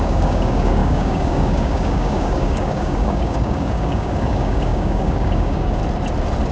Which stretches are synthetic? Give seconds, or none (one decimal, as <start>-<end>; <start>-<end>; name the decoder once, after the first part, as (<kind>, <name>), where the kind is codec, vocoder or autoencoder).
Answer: 0.0-5.8 (codec, DAC)